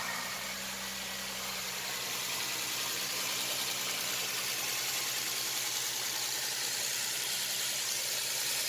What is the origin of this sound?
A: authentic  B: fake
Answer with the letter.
B